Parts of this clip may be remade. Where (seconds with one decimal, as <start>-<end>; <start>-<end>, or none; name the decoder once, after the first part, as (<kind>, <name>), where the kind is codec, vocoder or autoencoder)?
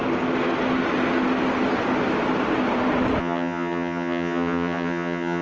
3.2-5.4 (vocoder, HiFi-GAN)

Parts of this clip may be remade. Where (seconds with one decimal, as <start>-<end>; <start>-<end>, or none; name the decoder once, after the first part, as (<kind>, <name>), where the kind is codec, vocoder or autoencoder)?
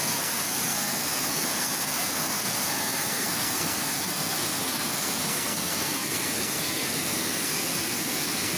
0.0-8.6 (codec, SNAC)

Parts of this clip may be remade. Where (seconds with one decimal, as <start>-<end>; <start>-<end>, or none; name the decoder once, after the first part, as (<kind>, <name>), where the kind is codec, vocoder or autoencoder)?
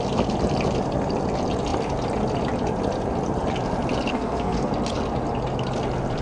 4.1-4.7 (codec, SNAC)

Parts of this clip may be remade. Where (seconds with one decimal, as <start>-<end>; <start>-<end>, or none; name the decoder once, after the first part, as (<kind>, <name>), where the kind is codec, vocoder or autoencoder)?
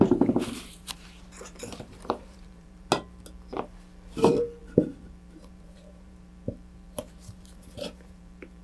0.7-2.9 (vocoder, BigVGAN v2); 4.6-8.6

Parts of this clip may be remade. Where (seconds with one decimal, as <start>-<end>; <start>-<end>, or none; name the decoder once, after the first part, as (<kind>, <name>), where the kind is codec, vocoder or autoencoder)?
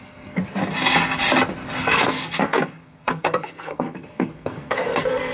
0.0-0.4 (codec, SNAC); 1.8-5.3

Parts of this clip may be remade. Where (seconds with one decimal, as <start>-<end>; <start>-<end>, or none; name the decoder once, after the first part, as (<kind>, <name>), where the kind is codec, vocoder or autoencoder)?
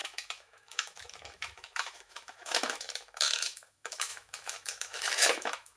0.0-5.8 (autoencoder, DAC-VAE)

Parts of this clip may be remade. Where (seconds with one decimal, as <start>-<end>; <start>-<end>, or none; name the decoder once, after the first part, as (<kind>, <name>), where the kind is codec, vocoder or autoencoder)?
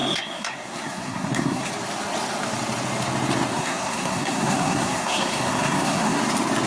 0.0-1.7 (codec, SNAC); 3.5-6.2